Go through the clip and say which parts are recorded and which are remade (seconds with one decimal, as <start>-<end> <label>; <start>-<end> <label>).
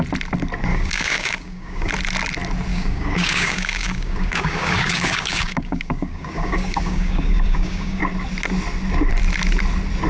0.0-0.7 recorded; 0.7-1.9 remade; 1.9-2.7 recorded; 2.7-8.0 remade; 8.0-10.1 recorded